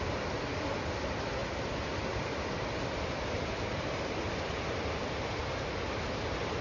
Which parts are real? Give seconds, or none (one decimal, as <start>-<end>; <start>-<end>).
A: 0.0-6.6